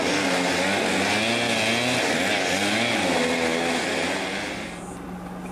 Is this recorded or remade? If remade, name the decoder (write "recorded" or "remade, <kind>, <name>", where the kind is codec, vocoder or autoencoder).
recorded